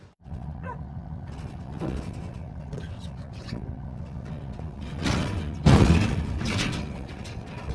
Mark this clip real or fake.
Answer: fake